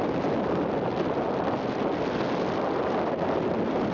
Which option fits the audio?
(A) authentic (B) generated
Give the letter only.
A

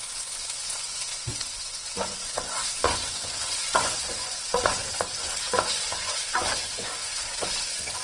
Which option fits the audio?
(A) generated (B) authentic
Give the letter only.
A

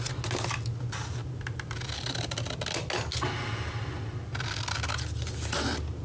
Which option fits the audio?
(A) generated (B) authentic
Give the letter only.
B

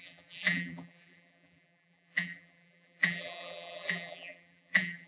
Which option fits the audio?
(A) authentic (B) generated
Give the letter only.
B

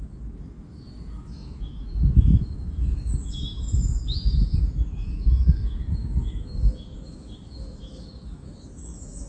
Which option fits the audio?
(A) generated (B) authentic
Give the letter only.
A